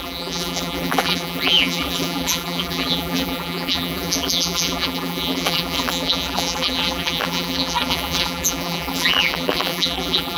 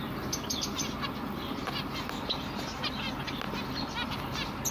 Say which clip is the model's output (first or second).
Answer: first